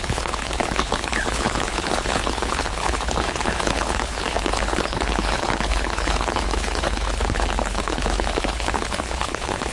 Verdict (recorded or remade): remade